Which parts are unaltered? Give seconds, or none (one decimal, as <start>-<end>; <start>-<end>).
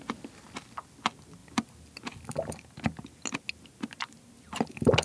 0.0-5.0